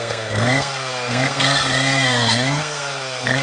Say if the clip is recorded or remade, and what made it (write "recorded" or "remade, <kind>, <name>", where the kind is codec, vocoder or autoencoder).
remade, codec, SNAC